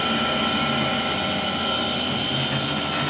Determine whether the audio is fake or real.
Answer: real